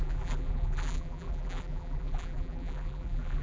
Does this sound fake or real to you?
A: fake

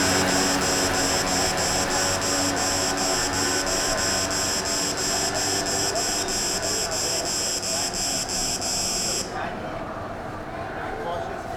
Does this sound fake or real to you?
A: real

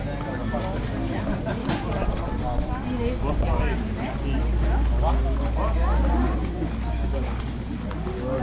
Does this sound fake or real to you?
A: real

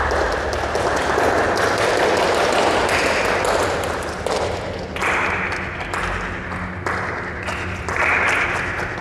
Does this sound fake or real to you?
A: real